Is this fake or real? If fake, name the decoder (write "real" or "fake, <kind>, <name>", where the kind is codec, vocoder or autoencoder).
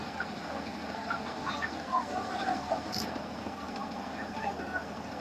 fake, codec, SNAC